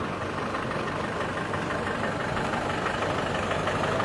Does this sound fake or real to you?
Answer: real